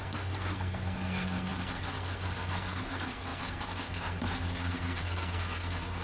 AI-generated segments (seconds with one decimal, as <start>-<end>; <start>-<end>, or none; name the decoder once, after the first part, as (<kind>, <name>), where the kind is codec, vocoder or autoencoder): 0.0-6.0 (codec, SNAC)